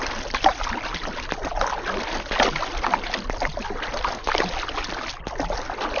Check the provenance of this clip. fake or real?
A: real